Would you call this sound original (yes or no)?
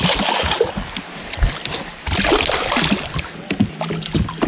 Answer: yes